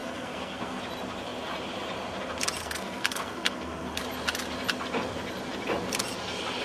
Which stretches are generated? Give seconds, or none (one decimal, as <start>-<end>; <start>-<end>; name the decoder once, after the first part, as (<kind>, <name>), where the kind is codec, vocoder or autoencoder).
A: 0.0-0.8 (codec, SNAC); 2.6-4.0

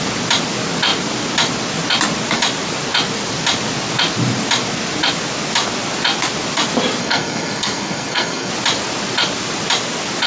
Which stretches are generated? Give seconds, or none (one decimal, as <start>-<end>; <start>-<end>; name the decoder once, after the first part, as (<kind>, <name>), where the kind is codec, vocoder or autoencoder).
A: 7.0-8.5 (codec, SNAC)

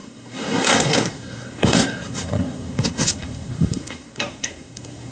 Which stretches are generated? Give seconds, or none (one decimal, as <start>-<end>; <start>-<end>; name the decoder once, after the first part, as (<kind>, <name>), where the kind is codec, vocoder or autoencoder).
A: 0.0-5.1 (codec, SNAC)